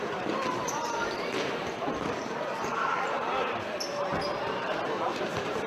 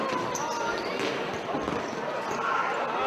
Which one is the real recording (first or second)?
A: second